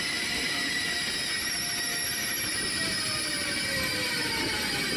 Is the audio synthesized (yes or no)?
no